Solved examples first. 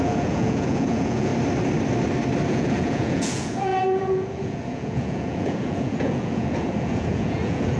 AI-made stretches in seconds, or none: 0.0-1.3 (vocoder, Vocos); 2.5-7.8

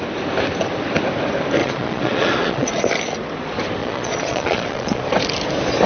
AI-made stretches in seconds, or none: 1.6-2.8 (vocoder, Vocos); 3.8-5.0

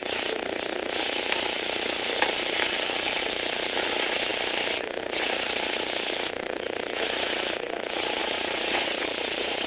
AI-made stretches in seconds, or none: 8.2-9.7 (vocoder, Vocos)

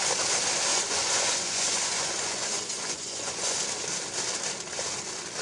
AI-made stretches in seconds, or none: 0.7-3.6 (vocoder, Vocos)

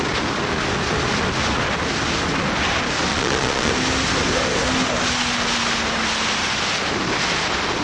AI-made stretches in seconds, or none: 3.1-3.7 (vocoder, Vocos)

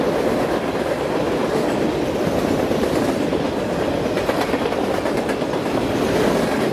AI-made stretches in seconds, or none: none